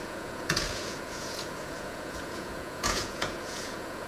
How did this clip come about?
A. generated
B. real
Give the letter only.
A